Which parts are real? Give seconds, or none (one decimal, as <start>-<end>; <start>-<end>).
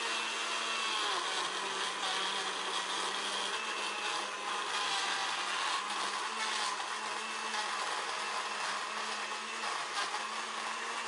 0.0-11.1